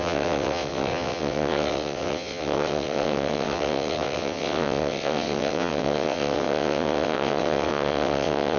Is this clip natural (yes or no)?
no